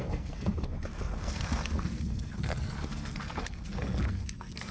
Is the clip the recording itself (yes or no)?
no